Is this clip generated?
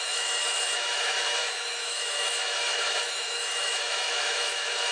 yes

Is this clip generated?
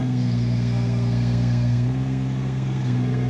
yes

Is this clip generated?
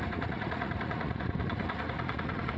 yes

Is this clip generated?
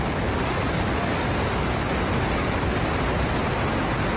no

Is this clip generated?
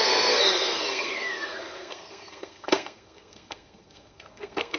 yes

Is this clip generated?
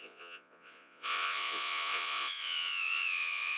yes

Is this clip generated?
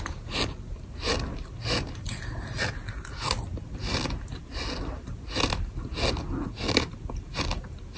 no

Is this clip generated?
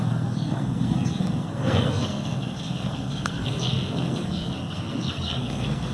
yes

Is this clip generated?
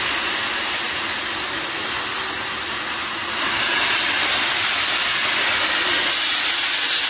no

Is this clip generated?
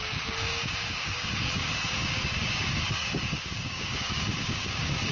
yes